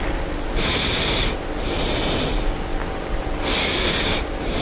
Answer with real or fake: real